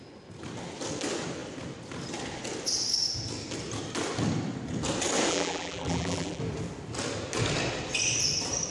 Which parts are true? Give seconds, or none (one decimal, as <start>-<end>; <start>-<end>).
0.0-5.3; 6.4-8.7